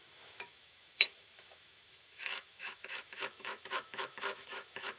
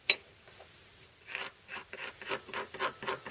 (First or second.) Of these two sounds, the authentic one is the second